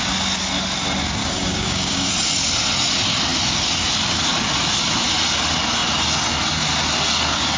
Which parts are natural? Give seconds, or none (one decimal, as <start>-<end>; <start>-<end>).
0.0-1.2; 2.1-7.6